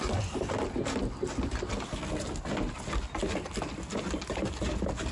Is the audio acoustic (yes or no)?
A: yes